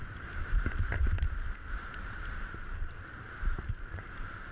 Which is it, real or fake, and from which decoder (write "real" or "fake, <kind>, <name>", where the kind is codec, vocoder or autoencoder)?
fake, vocoder, BigVGAN v2